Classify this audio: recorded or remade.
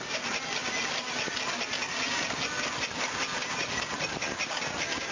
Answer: recorded